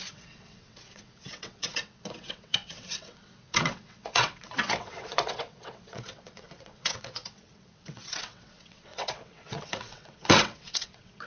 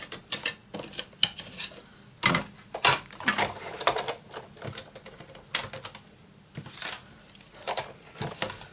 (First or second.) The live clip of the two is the second